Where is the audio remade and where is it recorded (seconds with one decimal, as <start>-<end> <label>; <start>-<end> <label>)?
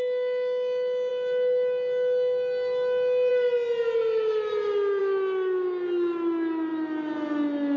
0.0-7.8 recorded